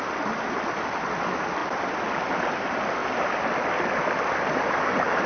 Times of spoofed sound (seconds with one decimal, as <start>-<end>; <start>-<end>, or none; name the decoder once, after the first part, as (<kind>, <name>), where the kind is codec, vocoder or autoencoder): none